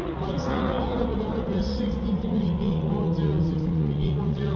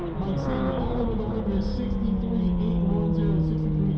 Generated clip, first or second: first